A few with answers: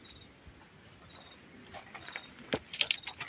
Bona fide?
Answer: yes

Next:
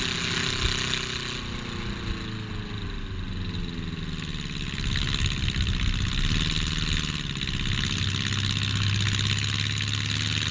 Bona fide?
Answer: yes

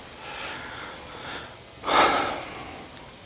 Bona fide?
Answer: yes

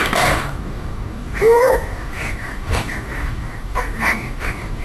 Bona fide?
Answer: no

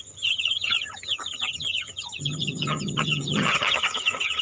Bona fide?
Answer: no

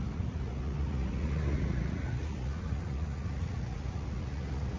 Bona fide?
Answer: no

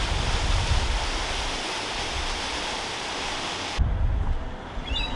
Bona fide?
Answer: yes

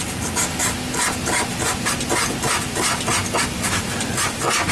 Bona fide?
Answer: yes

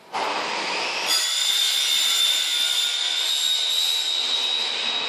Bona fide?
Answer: yes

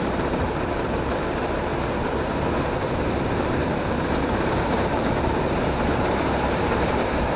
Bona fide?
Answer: no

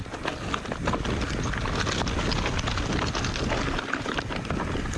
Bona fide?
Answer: yes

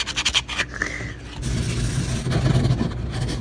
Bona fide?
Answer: yes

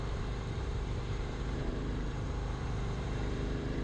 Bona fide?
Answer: no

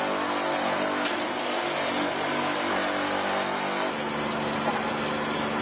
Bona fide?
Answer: yes